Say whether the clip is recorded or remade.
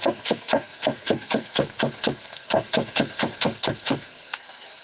remade